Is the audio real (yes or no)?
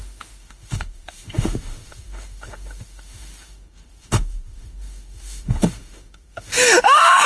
no